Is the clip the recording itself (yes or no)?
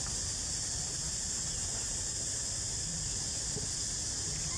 no